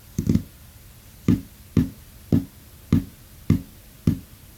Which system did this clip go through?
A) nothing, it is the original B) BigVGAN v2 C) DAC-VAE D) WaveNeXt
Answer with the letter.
B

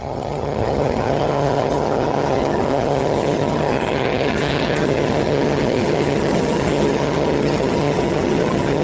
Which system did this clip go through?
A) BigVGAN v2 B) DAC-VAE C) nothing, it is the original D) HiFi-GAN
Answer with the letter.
D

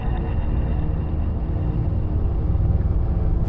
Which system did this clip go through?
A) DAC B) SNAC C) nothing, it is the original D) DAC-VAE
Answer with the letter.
C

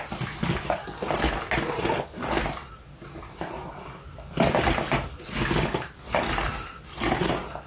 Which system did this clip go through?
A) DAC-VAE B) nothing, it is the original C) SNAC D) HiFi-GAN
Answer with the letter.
B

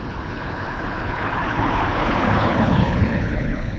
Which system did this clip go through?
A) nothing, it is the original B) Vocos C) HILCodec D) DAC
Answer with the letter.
C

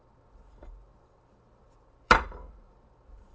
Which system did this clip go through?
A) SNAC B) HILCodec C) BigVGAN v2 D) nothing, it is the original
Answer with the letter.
C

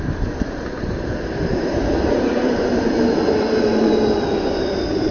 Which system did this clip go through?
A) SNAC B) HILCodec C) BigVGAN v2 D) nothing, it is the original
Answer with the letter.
C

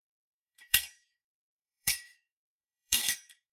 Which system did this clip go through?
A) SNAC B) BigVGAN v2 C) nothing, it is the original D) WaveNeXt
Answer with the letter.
A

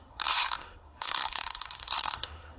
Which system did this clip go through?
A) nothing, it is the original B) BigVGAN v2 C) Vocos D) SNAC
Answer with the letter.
D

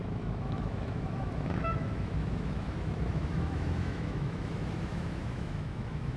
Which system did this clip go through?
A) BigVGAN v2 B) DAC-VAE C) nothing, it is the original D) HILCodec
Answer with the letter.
B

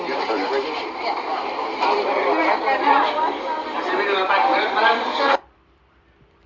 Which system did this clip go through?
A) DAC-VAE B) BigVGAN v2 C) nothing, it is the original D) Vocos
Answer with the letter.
B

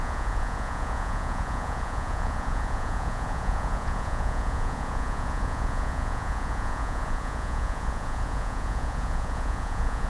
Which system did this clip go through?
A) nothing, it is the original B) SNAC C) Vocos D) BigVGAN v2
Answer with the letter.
C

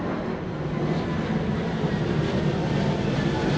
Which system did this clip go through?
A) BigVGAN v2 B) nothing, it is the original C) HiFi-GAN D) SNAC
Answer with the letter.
B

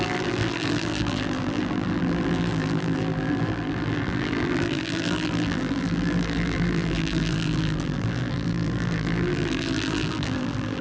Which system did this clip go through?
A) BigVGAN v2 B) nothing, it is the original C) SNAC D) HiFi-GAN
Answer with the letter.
A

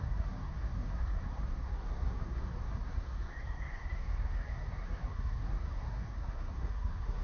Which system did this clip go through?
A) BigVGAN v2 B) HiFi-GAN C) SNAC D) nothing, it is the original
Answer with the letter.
C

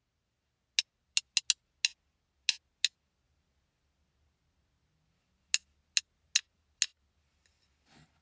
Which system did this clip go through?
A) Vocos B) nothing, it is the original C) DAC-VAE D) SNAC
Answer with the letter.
B